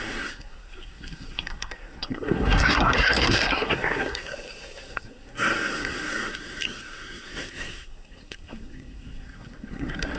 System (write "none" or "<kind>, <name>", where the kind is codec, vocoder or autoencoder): codec, SNAC